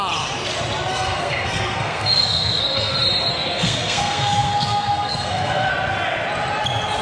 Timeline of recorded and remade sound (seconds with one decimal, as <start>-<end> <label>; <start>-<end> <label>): 0.0-0.9 recorded; 0.9-2.9 remade; 2.9-3.3 recorded; 3.3-5.7 remade; 5.7-7.0 recorded